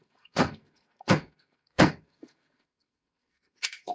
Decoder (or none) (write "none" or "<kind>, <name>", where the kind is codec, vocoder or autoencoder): codec, SNAC